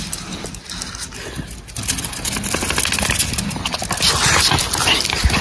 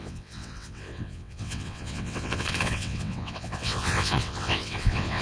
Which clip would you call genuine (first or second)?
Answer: first